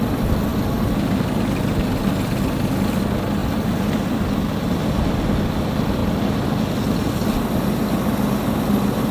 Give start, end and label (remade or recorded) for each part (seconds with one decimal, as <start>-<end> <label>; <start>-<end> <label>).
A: 0.0-3.4 recorded; 3.4-4.1 remade; 4.1-9.1 recorded